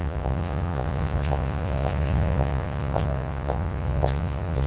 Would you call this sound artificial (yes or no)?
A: yes